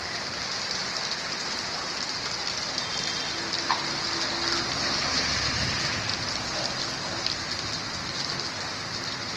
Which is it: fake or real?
real